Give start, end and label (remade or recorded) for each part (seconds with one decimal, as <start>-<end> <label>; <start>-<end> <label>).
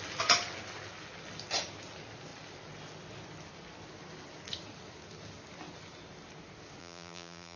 0.0-6.8 recorded; 6.8-7.6 remade